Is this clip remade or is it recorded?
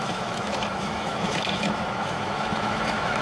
remade